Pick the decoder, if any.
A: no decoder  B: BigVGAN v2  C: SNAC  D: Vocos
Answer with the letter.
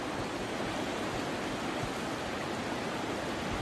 A